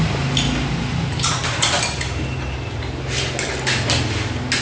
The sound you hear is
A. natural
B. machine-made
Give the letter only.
A